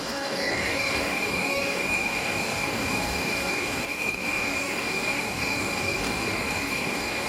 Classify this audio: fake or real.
fake